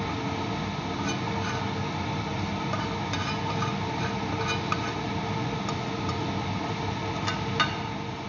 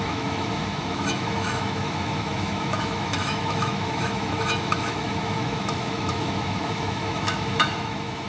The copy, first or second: second